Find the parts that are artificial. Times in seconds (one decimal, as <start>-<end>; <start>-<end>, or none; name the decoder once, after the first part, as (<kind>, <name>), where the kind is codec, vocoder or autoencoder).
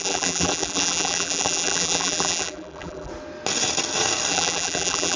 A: 0.0-3.1 (vocoder, BigVGAN v2); 4.3-5.2